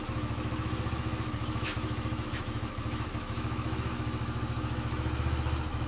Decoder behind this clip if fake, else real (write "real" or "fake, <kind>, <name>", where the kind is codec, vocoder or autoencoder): fake, autoencoder, DAC-VAE